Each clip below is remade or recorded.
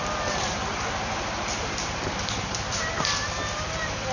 recorded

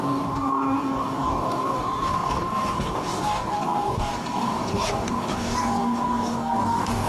remade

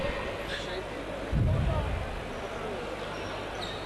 recorded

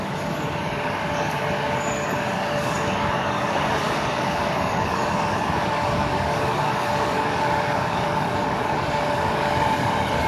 remade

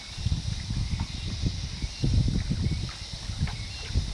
recorded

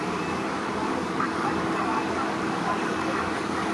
remade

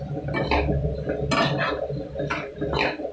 recorded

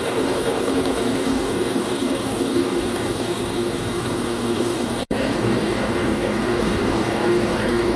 remade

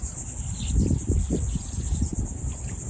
recorded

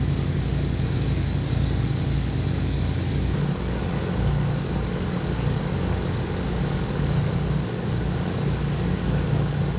remade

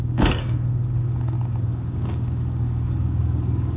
remade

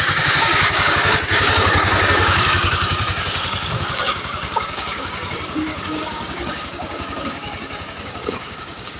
remade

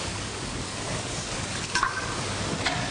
remade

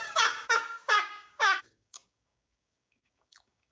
remade